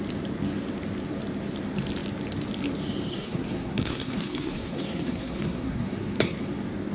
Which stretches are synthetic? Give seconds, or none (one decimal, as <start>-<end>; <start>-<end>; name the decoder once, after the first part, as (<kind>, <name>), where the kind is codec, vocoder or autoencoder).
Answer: 3.1-6.4 (codec, SNAC)